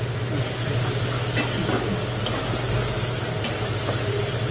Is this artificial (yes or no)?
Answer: no